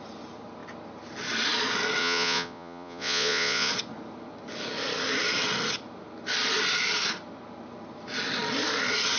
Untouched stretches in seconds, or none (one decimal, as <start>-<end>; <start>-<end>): 0.0-2.0; 3.7-9.2